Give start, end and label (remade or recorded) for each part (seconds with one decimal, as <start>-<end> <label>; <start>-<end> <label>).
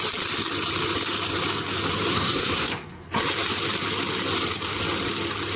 0.0-2.1 recorded; 2.1-3.2 remade; 3.2-5.6 recorded